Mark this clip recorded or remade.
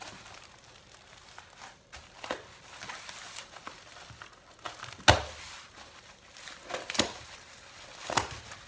recorded